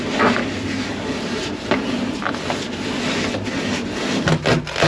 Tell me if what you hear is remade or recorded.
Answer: recorded